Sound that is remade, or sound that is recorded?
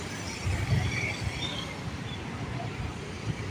recorded